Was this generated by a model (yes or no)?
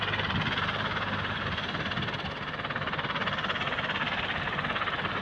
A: no